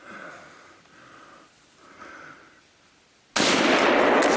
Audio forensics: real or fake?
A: real